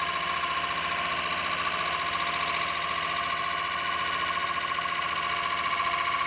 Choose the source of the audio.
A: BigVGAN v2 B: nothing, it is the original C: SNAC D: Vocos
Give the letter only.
B